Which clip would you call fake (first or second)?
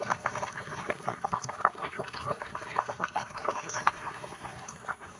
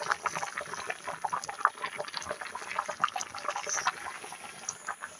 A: first